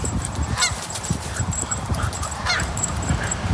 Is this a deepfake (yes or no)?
yes